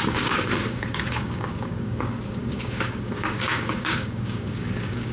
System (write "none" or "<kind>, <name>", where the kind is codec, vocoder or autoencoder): codec, DAC